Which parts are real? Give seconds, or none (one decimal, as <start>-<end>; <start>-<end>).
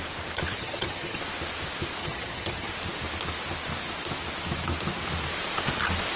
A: 0.0-0.5; 1.2-2.0; 2.7-6.2